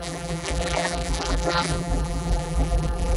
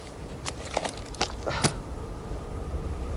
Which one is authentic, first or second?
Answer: second